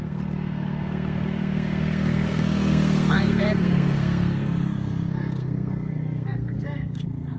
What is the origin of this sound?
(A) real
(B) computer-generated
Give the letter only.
B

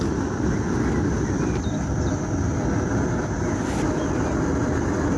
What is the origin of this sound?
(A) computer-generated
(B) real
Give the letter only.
B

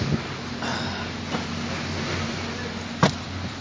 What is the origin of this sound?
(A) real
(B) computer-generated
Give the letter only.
A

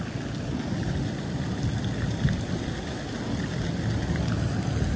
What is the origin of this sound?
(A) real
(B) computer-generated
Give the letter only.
A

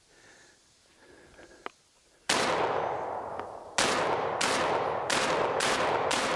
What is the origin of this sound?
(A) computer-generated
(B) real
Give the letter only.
B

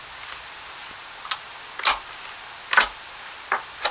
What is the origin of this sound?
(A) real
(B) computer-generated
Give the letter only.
A